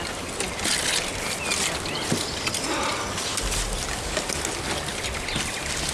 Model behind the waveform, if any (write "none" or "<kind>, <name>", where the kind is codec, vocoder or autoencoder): none